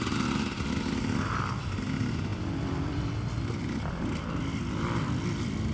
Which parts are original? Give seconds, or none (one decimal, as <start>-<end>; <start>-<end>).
0.0-5.7

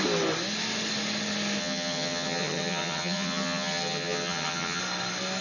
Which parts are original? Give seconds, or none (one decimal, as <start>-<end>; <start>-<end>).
0.0-1.6; 4.8-5.4

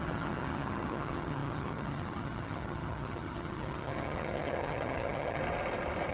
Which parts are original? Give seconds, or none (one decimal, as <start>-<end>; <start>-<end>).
5.4-6.1

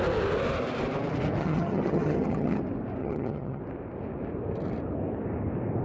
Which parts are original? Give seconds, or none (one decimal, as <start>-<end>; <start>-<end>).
0.0-1.4; 2.6-3.0; 3.6-5.8

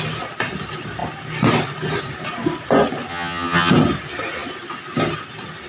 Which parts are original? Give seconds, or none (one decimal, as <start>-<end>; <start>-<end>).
0.0-3.1; 3.7-5.7

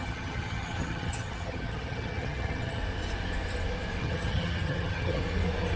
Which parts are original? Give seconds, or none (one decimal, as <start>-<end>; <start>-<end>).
2.8-4.0; 5.2-5.8